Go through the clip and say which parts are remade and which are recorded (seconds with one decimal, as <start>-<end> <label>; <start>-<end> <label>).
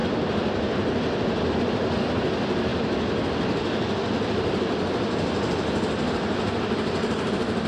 0.0-7.7 recorded